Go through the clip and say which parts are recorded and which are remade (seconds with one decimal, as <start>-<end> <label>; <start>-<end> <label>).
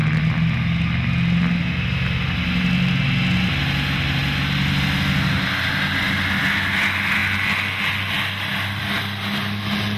0.0-10.0 recorded